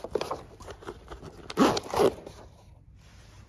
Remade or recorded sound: recorded